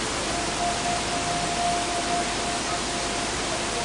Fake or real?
real